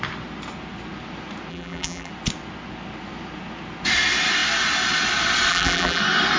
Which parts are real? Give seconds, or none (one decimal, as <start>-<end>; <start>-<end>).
0.0-1.5; 2.1-5.5; 6.0-6.4